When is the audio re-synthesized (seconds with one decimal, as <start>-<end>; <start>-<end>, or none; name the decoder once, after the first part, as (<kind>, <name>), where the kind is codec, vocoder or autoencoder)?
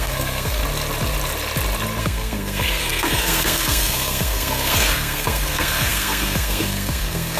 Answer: 0.0-0.6 (codec, SNAC); 2.0-7.4